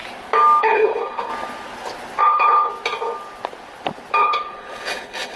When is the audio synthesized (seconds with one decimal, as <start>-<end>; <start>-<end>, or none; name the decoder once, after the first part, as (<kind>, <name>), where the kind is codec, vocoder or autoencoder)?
0.6-1.3 (codec, HILCodec); 2.2-2.7; 4.2-5.4